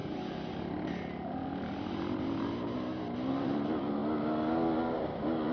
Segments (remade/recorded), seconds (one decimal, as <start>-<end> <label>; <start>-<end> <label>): 0.0-5.5 recorded